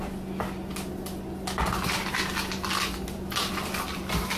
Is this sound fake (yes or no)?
no